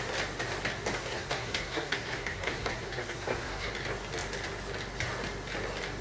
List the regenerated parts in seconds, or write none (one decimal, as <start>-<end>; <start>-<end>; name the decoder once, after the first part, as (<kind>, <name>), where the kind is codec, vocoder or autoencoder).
1.0-3.7 (codec, SNAC)